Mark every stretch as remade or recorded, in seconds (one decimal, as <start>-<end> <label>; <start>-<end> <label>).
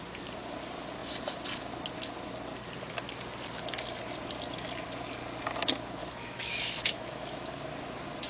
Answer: 0.0-6.0 recorded; 6.0-7.5 remade; 7.5-8.3 recorded